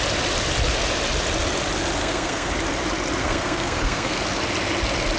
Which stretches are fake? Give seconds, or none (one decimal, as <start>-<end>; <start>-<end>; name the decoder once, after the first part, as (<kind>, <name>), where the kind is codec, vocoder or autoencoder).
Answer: 2.0-2.5 (codec, SNAC); 3.2-4.2